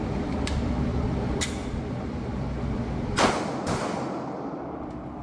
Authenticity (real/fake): real